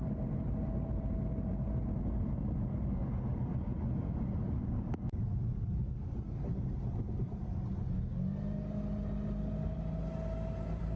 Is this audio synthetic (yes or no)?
no